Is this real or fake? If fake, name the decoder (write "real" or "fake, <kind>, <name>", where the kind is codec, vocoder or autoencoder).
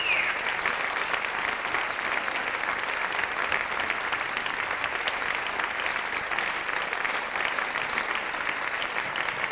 real